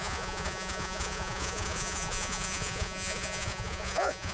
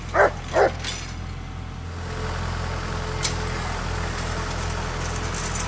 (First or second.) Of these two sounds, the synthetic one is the first